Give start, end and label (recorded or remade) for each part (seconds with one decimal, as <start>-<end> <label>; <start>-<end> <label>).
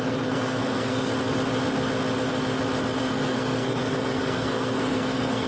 0.0-1.1 remade; 1.1-3.0 recorded; 3.0-5.5 remade